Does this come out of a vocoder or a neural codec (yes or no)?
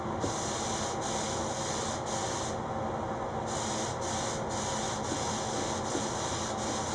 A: no